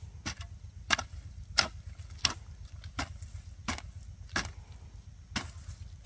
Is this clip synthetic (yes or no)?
no